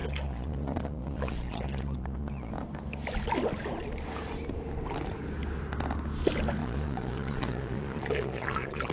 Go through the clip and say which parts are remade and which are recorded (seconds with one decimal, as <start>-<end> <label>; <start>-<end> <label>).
0.0-2.5 remade; 2.5-6.6 recorded; 6.6-8.9 remade